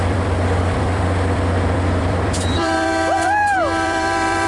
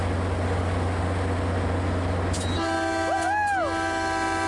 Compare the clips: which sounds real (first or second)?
second